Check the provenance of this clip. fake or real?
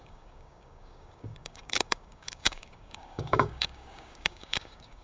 fake